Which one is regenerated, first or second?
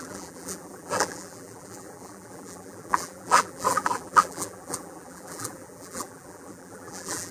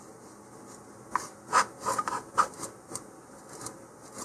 first